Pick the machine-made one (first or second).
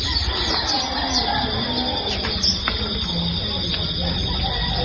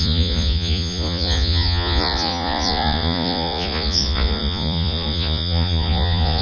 second